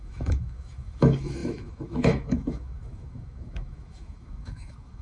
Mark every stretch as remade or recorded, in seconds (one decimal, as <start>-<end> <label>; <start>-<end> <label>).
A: 0.0-5.0 remade